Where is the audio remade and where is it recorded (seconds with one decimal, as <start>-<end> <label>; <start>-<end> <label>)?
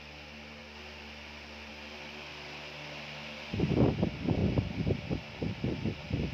0.0-6.3 recorded